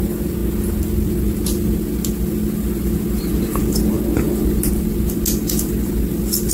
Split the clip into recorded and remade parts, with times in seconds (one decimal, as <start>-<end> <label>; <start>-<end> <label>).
0.0-6.5 recorded